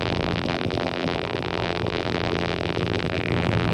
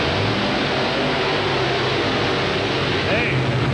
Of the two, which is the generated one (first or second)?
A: first